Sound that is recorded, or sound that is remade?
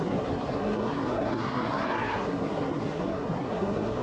remade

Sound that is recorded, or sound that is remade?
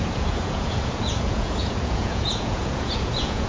remade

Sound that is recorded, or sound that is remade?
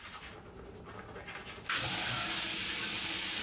recorded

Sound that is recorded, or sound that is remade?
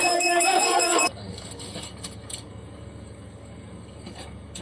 remade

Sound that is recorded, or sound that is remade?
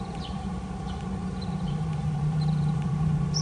remade